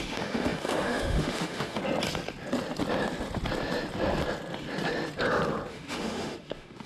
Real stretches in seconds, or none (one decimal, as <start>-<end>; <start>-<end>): 1.8-5.7